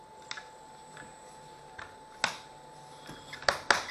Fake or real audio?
real